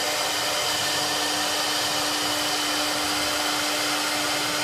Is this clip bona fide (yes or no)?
yes